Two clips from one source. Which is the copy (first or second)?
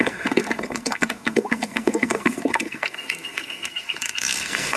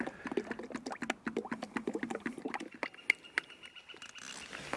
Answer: first